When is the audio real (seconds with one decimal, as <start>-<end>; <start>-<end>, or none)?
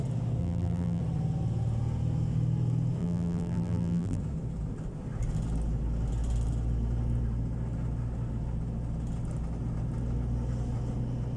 0.0-0.4; 1.0-3.0; 4.2-11.4